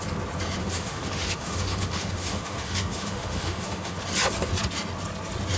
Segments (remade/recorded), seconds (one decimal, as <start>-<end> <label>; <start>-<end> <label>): 0.0-0.6 recorded; 0.6-4.0 remade; 4.0-5.6 recorded